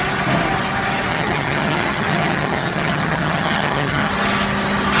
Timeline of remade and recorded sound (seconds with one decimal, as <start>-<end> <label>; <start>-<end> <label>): 0.0-1.1 recorded; 1.1-4.1 remade; 4.1-5.0 recorded